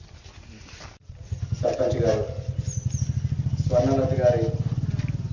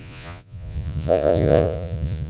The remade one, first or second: second